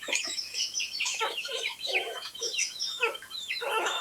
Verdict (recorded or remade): remade